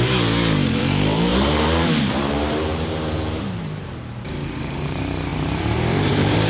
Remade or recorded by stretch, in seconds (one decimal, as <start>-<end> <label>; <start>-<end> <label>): 0.0-6.5 remade